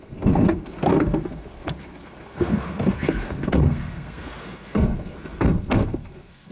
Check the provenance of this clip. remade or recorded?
remade